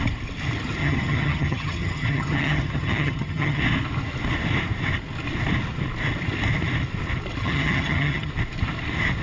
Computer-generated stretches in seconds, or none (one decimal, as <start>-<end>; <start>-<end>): 0.8-3.6; 7.4-8.3